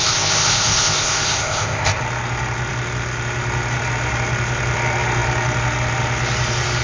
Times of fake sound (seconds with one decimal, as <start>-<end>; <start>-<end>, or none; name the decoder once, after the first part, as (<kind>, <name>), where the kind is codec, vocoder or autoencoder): 0.0-2.0 (codec, ZipCodec)